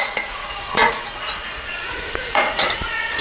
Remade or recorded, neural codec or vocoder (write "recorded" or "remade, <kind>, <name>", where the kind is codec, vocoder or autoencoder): remade, vocoder, Vocos